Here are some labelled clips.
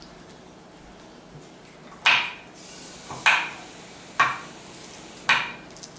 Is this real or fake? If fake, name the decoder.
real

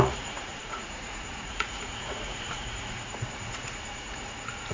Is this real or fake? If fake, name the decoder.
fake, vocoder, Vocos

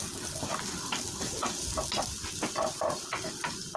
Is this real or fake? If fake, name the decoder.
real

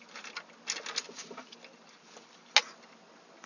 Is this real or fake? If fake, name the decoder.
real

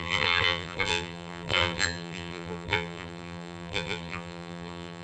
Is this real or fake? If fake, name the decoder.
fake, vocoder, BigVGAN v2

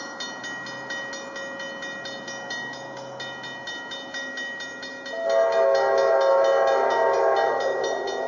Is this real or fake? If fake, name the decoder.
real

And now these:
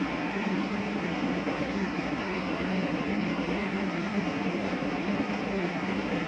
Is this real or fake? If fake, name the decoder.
fake, codec, SNAC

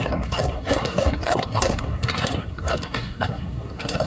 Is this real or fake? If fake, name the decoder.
fake, codec, SNAC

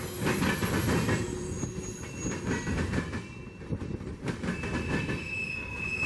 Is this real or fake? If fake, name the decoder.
real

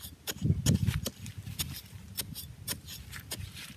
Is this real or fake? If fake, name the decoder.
real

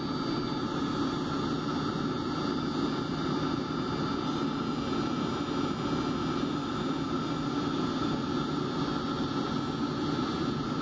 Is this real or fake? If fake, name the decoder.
real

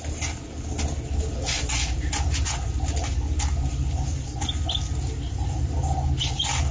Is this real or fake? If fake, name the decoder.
real